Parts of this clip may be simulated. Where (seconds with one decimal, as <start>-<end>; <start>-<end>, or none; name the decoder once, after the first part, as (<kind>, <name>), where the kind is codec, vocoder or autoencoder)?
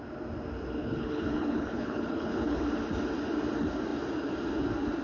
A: 0.8-2.6 (codec, HILCodec)